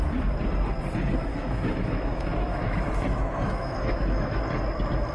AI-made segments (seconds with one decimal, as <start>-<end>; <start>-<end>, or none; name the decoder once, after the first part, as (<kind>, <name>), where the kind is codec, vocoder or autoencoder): 1.3-4.4 (autoencoder, DAC-VAE)